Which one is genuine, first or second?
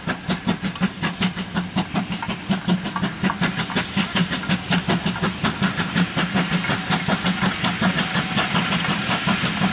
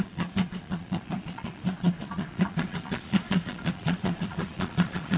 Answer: first